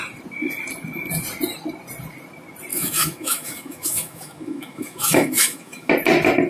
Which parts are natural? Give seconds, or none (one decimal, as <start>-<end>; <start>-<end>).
0.0-2.7; 5.9-6.5